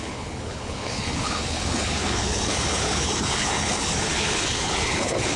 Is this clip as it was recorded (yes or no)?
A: no